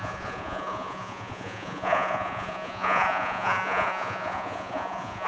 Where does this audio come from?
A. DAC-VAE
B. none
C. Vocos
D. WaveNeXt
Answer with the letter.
C